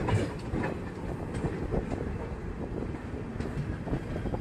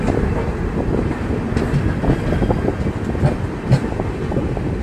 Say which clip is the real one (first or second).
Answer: second